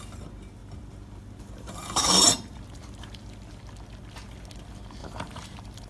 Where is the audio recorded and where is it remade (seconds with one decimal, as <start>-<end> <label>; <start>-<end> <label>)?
0.0-0.6 recorded; 0.6-3.5 remade; 3.5-5.0 recorded; 5.0-5.9 remade

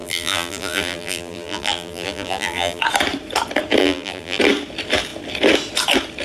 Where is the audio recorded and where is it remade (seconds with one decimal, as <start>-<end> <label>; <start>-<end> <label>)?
0.0-2.8 remade; 2.8-3.8 recorded; 3.8-4.4 remade; 4.4-6.2 recorded

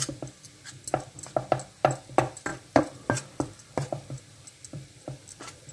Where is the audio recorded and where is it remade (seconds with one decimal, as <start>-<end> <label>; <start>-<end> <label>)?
0.0-2.5 recorded; 2.5-5.7 remade

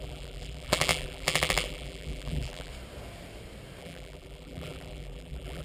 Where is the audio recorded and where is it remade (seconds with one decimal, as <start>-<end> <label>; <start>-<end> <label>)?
0.0-2.7 remade; 2.7-3.8 recorded; 3.8-5.6 remade

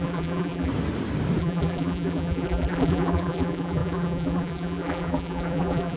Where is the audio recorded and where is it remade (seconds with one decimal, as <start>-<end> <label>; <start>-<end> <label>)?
0.0-0.7 remade; 0.7-1.4 recorded; 1.4-6.0 remade

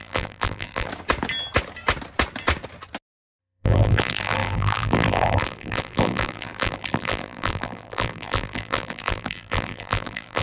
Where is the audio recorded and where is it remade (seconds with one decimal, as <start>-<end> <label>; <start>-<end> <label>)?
0.0-0.9 remade; 0.9-3.4 recorded; 3.4-10.4 remade

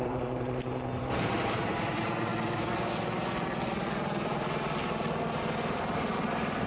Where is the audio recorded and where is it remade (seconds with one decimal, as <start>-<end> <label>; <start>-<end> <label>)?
0.0-2.3 remade; 2.3-6.3 recorded; 6.3-6.7 remade

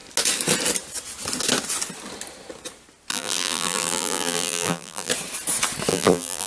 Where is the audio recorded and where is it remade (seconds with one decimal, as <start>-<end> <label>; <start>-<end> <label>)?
0.0-3.1 recorded; 3.1-5.1 remade; 5.1-5.9 recorded; 5.9-6.5 remade